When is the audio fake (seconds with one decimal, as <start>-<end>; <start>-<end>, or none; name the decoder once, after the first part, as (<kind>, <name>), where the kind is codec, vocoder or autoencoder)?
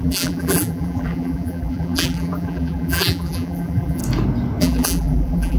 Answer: 0.0-4.0 (vocoder, BigVGAN v2); 4.6-5.6